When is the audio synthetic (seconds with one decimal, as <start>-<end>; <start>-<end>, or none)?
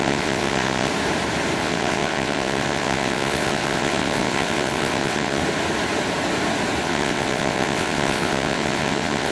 0.0-0.9; 1.6-5.4; 6.8-9.3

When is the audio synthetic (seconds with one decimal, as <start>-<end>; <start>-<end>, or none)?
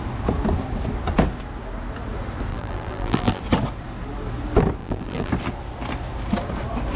2.5-3.4; 4.8-5.3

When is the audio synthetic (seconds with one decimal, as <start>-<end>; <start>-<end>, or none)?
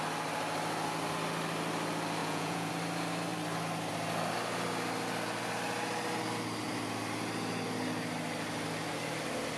2.2-2.7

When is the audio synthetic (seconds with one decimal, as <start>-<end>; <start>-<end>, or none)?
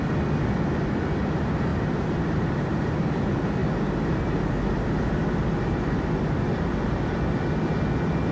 1.7-2.8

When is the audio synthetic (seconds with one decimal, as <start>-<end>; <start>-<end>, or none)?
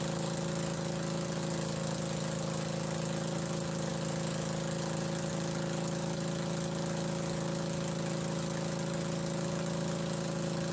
none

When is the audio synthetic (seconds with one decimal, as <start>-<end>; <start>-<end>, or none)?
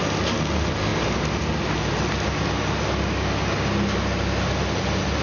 none